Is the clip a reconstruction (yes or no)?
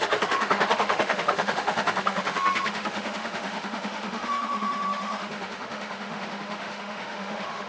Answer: yes